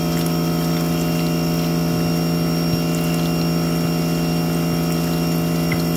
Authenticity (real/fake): real